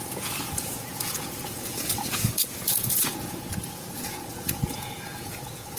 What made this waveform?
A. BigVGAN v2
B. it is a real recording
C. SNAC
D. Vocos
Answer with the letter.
D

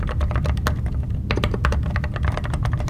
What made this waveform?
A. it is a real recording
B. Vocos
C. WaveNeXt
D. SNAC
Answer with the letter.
A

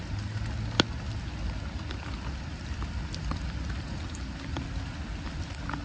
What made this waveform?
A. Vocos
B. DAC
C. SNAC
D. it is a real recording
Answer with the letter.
D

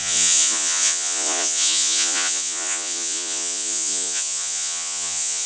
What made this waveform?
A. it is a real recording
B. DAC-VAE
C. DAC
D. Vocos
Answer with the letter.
D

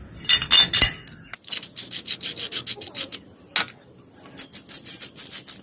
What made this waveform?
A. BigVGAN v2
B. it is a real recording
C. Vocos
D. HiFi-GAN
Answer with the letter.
B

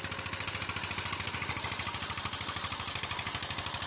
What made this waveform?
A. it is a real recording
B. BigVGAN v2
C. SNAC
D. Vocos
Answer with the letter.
A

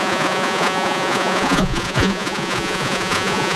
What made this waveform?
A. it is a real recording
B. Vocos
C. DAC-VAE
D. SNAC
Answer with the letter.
B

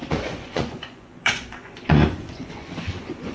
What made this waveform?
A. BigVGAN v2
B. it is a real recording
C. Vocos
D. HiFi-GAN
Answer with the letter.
C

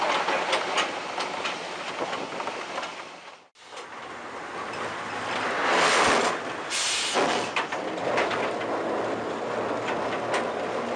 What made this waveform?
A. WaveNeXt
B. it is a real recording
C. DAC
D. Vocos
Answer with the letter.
B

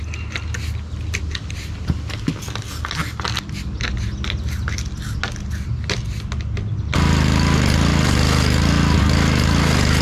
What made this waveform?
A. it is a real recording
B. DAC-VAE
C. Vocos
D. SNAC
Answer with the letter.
A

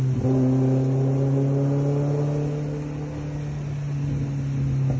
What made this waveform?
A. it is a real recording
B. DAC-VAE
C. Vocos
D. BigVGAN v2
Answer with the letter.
A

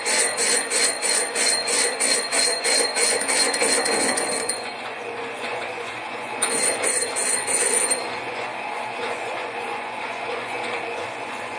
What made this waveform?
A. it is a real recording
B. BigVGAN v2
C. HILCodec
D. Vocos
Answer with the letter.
D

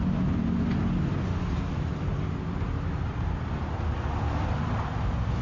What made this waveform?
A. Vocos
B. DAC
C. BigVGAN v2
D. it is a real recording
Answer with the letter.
D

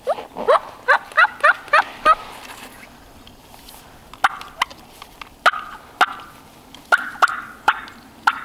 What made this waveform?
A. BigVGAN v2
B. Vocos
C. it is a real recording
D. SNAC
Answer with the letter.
C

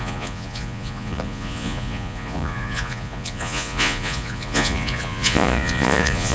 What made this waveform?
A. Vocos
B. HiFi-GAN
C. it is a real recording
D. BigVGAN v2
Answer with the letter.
A